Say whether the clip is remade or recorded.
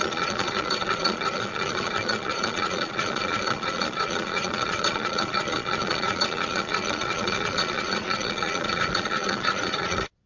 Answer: remade